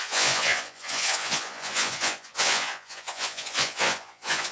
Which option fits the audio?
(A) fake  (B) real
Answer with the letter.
A